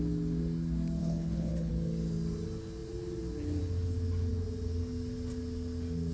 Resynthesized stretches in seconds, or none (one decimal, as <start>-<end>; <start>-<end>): 1.0-1.7

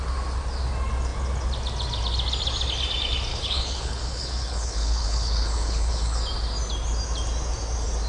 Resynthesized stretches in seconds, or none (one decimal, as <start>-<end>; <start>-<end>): 3.3-6.2

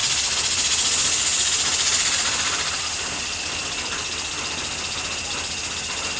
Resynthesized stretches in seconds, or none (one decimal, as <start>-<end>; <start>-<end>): none

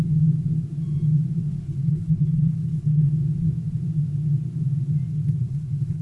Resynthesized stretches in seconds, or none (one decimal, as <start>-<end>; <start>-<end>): 1.5-3.1; 5.1-6.0

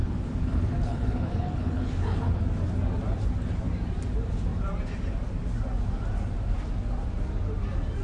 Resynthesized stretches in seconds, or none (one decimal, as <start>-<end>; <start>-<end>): 0.0-2.4